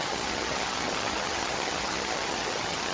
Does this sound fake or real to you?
fake